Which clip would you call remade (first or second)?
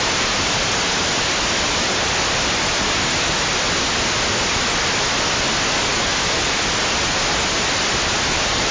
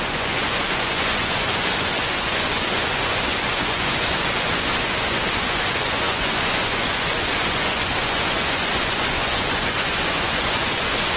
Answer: second